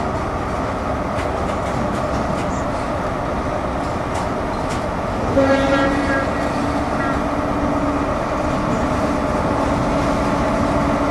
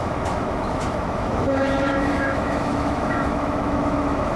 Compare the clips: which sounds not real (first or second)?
second